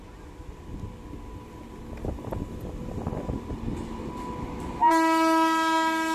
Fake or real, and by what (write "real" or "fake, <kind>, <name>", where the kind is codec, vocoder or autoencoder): real